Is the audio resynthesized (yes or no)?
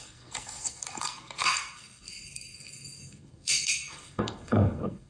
yes